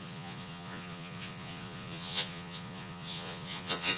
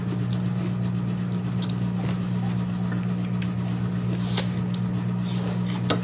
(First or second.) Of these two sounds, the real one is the second